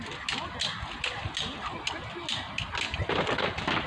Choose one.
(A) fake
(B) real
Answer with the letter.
B